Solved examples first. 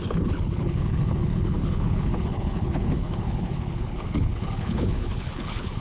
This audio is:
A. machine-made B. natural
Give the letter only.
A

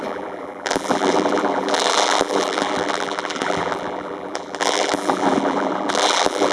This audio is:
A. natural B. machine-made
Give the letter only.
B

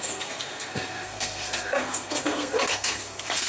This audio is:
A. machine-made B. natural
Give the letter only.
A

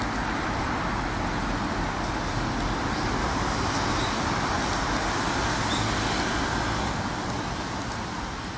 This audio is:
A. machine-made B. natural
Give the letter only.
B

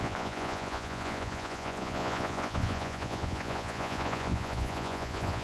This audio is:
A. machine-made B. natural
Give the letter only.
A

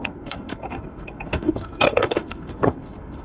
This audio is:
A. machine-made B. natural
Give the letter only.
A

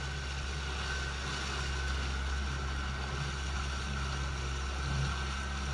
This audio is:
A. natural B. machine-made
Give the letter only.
A